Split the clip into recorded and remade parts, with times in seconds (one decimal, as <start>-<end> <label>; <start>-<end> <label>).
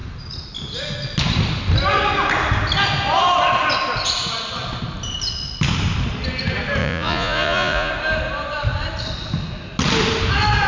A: 0.0-6.8 recorded; 6.8-7.9 remade; 7.9-10.7 recorded